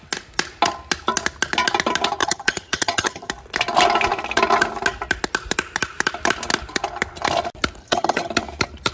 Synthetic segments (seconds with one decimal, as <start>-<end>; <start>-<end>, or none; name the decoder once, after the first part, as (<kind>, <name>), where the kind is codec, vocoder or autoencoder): 2.2-3.3 (vocoder, HiFi-GAN); 7.8-8.3